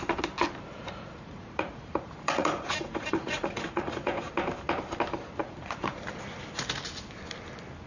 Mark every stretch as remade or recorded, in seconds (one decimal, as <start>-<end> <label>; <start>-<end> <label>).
0.0-0.7 recorded; 0.7-4.3 remade; 4.3-5.4 recorded; 5.4-6.0 remade; 6.0-7.9 recorded